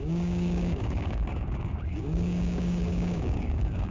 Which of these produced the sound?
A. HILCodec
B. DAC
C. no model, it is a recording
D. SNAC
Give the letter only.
B